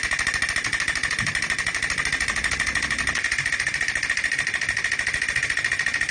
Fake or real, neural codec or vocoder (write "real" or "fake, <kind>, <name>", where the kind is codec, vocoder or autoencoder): real